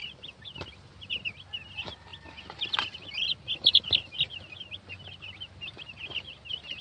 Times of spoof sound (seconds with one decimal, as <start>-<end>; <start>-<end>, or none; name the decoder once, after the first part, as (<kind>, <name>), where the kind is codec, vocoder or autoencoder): none